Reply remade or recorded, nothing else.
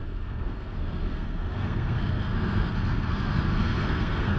remade